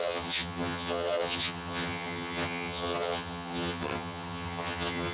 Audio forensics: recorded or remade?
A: remade